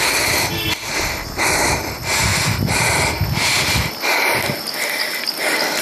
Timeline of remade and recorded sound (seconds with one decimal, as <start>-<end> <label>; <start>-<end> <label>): 0.0-5.8 recorded